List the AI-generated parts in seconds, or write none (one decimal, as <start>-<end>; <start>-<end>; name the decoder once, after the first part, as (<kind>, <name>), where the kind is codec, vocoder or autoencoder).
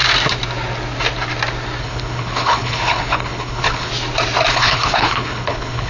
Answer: 1.8-3.9 (codec, HILCodec); 4.5-5.9